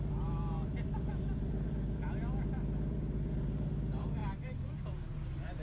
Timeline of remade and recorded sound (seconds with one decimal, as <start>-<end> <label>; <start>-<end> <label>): 0.0-5.6 remade